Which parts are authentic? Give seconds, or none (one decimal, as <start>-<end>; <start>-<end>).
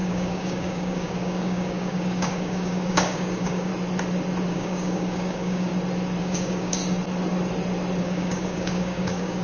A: 3.7-4.5; 5.7-6.2; 6.8-8.0